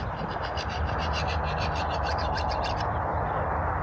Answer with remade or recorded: recorded